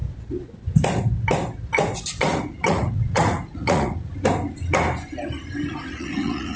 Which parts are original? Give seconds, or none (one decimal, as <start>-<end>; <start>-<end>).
0.0-2.2; 4.1-5.7